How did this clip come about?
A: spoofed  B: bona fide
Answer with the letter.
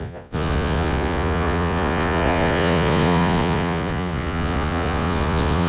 A